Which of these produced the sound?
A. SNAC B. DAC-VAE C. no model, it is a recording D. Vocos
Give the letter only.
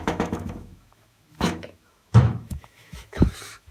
B